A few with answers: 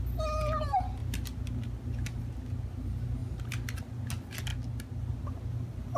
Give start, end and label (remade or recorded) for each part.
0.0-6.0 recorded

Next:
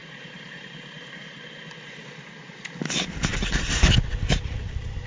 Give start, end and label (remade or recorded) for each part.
0.0-1.1 remade; 1.1-5.1 recorded

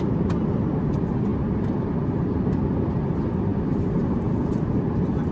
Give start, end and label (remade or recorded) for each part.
0.0-3.5 recorded; 3.5-4.7 remade; 4.7-5.3 recorded

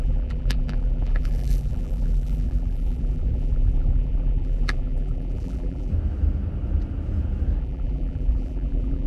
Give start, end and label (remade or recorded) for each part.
0.0-5.9 remade; 5.9-7.6 recorded; 7.6-9.1 remade

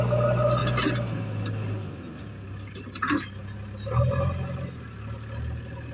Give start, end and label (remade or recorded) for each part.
0.0-5.9 recorded

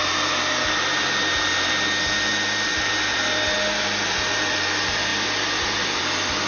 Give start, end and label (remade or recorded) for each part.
0.0-6.5 recorded

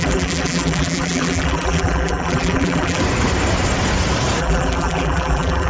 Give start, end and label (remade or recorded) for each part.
0.0-3.0 remade; 3.0-4.4 recorded; 4.4-5.7 remade

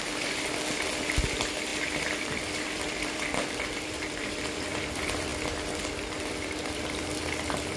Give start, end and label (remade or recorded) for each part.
0.0-5.3 remade; 5.3-5.9 recorded; 5.9-7.8 remade